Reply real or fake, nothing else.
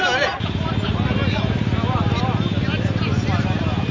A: real